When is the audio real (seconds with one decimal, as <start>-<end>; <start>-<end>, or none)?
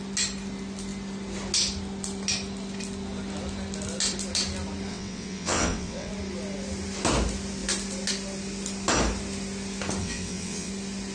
0.0-4.9; 6.1-10.0; 10.7-11.1